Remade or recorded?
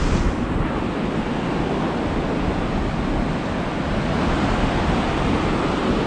recorded